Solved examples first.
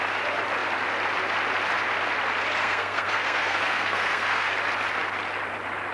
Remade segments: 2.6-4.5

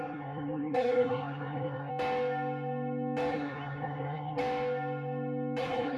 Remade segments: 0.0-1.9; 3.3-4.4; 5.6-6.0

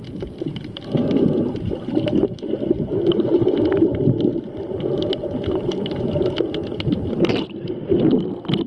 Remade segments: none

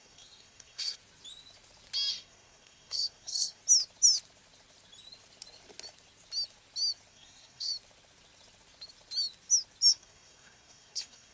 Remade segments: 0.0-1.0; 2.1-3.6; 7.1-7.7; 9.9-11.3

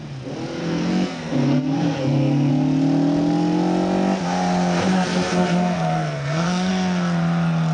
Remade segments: 0.6-2.5; 4.9-6.7

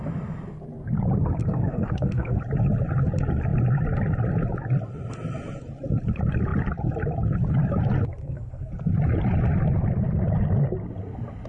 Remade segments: 1.4-2.4; 8.2-8.7